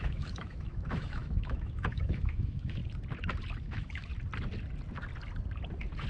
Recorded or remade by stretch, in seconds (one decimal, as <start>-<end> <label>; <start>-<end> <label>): 0.0-2.8 remade; 2.8-3.6 recorded; 3.6-4.1 remade; 4.1-6.1 recorded